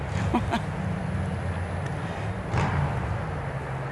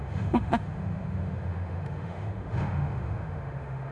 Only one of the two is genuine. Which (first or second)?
first